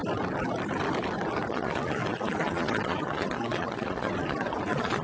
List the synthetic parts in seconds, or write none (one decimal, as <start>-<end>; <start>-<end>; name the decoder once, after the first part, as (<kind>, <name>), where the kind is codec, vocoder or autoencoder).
1.5-5.0 (vocoder, Vocos)